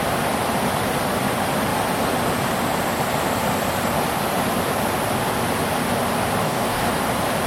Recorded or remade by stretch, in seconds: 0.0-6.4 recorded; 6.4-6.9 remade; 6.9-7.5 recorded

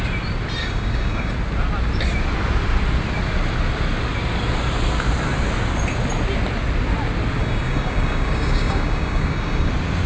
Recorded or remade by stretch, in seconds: 0.0-0.6 recorded; 0.6-1.3 remade; 1.3-7.4 recorded; 7.4-9.7 remade; 9.7-10.1 recorded

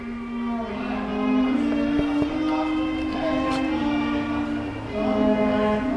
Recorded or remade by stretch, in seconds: 0.0-6.0 recorded

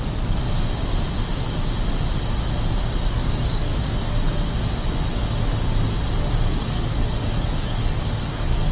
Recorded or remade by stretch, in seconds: 0.0-0.4 remade; 0.4-3.1 recorded; 3.1-3.7 remade; 3.7-6.0 recorded; 6.0-8.7 remade

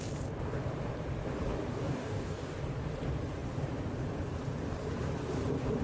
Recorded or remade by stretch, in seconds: 0.0-1.7 recorded; 1.7-2.6 remade; 2.6-5.8 recorded

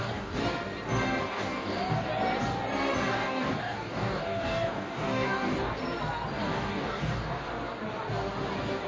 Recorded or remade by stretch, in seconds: 0.0-0.4 remade; 0.4-1.2 recorded; 1.2-2.1 remade; 2.1-3.1 recorded; 3.1-5.8 remade; 5.8-6.4 recorded; 6.4-7.5 remade; 7.5-8.9 recorded

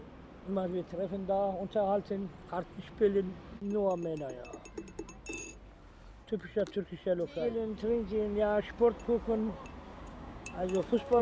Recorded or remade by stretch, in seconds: 0.0-9.9 recorded; 9.9-11.2 remade